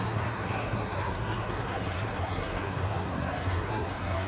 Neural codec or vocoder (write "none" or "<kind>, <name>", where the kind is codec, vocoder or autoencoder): codec, SNAC